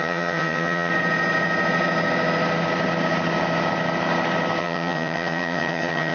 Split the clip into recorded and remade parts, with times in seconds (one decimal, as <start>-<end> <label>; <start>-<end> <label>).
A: 0.0-0.9 remade; 0.9-4.6 recorded; 4.6-6.1 remade